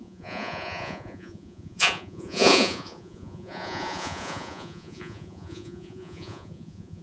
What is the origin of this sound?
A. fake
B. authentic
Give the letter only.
A